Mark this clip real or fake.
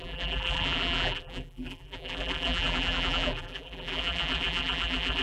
fake